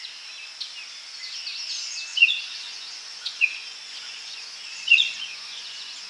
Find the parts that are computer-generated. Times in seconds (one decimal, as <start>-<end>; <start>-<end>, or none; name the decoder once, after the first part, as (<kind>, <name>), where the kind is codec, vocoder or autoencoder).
2.1-6.1 (vocoder, Vocos)